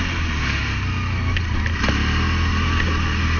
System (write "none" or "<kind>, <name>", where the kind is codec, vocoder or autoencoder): none